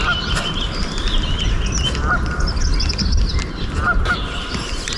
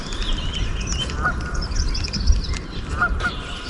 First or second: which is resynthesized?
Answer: second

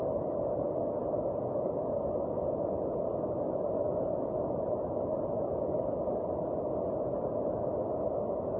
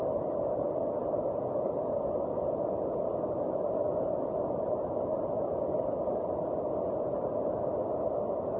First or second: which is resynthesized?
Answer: second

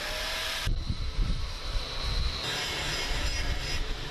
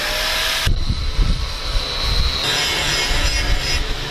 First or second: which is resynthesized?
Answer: first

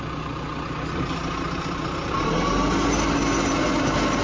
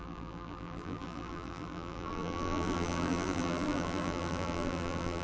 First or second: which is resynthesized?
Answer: second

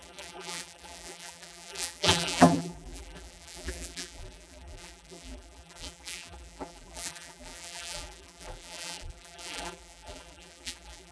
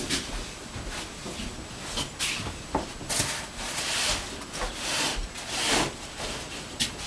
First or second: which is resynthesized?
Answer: first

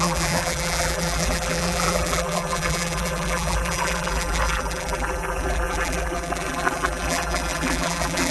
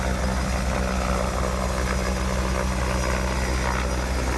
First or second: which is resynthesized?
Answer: first